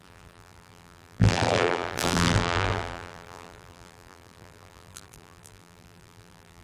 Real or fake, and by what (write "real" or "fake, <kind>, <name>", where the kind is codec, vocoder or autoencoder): fake, vocoder, BigVGAN v2